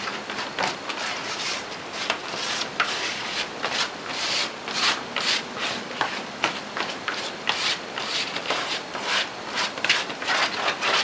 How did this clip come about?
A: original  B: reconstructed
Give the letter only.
B